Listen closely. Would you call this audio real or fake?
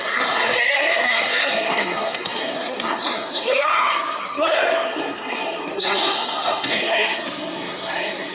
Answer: fake